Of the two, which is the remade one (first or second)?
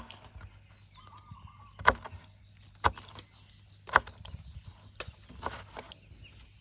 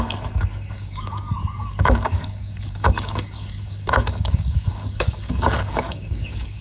second